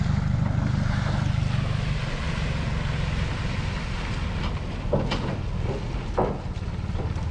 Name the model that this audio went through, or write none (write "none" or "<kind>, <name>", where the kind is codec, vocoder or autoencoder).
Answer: none